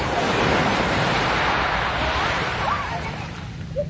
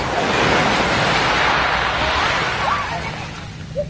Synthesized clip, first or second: first